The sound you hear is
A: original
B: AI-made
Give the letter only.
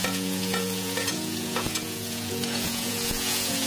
B